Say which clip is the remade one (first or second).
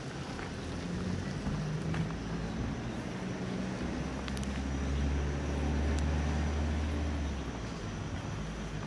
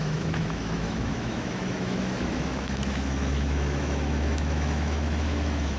second